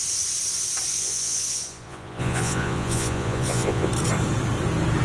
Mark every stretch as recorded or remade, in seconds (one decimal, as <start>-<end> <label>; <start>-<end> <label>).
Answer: 0.0-0.9 recorded; 0.9-3.9 remade; 3.9-5.0 recorded